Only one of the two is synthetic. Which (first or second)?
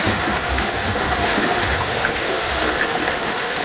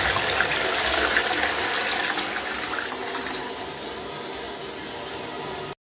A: first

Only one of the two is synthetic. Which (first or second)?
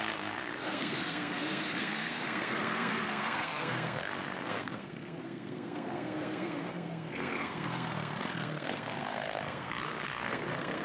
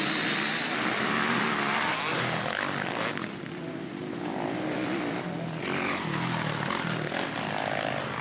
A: first